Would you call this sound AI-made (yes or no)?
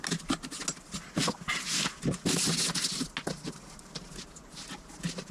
no